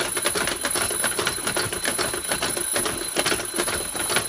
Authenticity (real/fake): real